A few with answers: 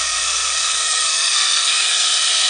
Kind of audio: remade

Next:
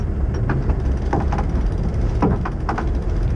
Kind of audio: recorded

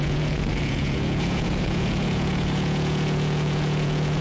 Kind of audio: remade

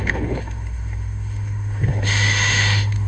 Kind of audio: remade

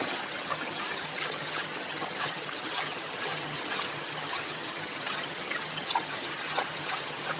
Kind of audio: remade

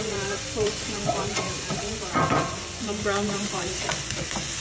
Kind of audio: remade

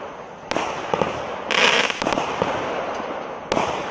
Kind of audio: recorded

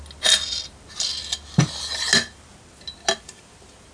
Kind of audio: recorded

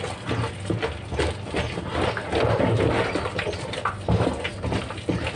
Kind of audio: recorded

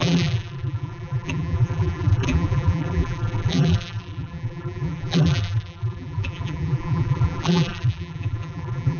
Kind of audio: remade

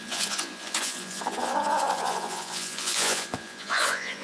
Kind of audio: remade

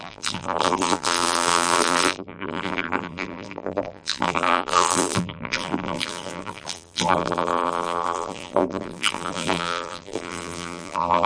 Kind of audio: remade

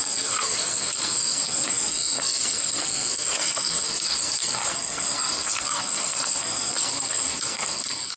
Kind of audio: remade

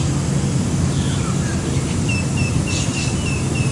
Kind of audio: recorded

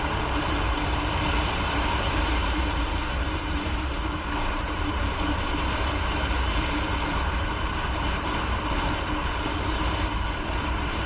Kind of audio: remade